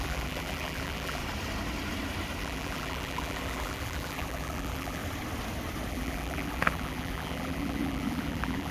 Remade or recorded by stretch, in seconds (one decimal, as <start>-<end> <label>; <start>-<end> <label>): 0.0-1.2 remade; 1.2-2.4 recorded; 2.4-5.0 remade; 5.0-5.9 recorded; 5.9-8.7 remade